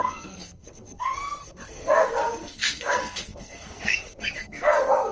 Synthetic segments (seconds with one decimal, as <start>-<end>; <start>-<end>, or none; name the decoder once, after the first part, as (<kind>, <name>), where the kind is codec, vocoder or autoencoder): 0.0-5.1 (codec, SNAC)